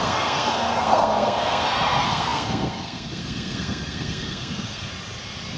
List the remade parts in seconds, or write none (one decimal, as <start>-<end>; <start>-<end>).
0.0-4.9